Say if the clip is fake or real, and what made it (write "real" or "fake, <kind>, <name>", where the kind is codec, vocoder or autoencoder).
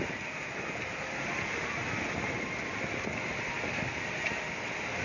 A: real